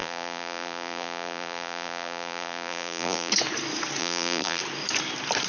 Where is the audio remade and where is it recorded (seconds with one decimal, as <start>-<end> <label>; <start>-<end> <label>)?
0.0-3.3 remade; 3.3-4.0 recorded; 4.0-4.6 remade; 4.6-5.5 recorded